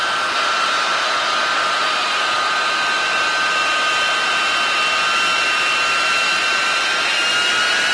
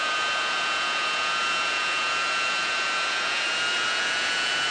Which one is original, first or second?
first